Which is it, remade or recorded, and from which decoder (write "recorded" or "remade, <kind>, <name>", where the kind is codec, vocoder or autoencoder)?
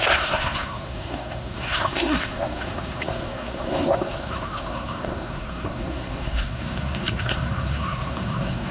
remade, codec, SNAC